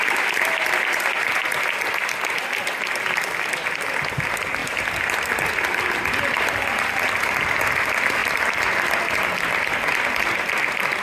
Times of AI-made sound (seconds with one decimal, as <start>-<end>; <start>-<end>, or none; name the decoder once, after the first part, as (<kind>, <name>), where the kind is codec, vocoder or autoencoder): none